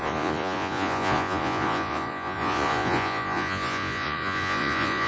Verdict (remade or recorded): remade